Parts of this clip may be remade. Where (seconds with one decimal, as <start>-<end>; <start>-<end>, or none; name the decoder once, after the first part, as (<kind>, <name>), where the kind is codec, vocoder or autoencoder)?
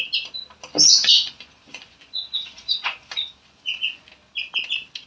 1.0-4.1 (vocoder, Vocos)